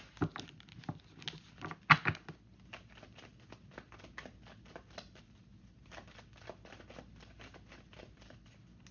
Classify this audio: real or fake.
real